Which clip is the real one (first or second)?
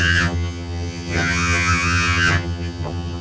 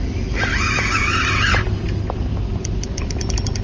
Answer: second